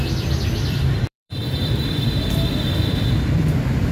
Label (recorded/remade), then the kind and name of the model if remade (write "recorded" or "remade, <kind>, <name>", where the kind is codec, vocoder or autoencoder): remade, vocoder, BigVGAN v2